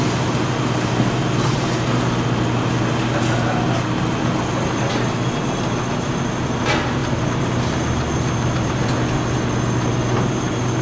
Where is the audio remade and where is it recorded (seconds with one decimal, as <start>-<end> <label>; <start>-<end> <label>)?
0.0-10.8 recorded